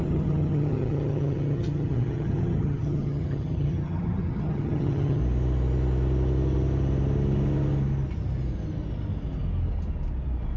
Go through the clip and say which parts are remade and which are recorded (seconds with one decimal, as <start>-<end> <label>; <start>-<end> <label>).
0.0-5.2 remade; 5.2-10.6 recorded